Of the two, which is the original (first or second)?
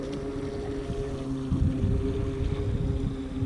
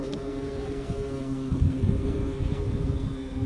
first